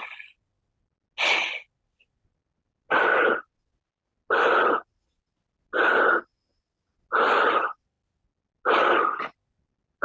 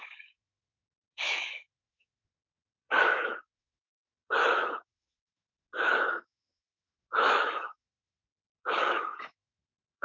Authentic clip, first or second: first